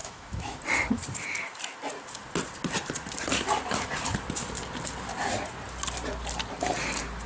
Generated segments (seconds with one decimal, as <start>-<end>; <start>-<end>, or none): 0.0-0.6

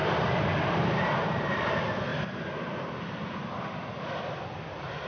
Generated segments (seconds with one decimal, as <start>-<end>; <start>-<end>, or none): 0.0-1.7

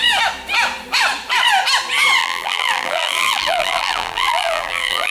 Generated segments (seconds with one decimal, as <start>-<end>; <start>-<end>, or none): 2.2-5.1

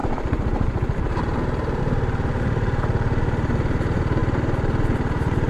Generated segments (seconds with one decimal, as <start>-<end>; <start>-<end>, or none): 0.0-5.5

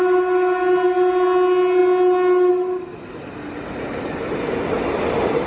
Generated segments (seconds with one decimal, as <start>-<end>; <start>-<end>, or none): none